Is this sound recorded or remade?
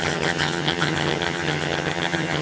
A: remade